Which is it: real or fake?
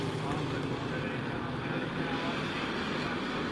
real